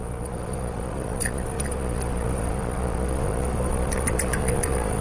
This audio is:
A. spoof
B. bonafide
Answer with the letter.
A